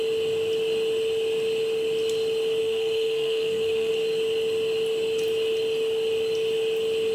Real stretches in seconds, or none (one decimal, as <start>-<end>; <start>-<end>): 0.0-2.6; 3.9-7.1